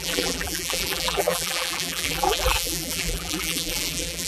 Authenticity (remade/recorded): remade